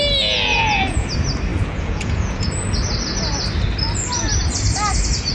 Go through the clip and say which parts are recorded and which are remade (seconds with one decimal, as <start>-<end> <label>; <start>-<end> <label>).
0.0-0.5 recorded; 0.5-1.1 remade; 1.1-1.5 recorded; 1.5-2.5 remade; 2.5-5.3 recorded